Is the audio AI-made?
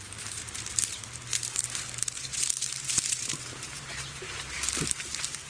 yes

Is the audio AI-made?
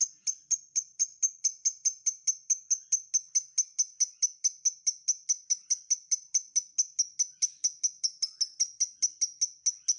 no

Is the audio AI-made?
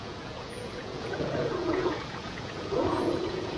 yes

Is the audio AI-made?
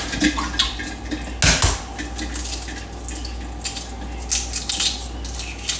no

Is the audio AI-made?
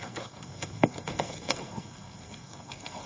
yes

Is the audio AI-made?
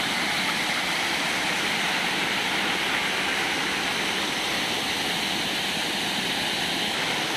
no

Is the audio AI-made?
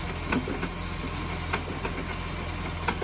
no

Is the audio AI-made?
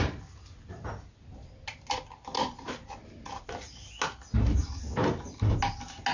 no